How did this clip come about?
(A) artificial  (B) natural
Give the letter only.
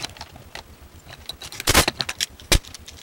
B